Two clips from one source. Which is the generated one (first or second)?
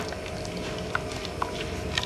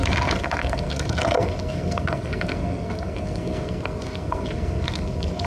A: second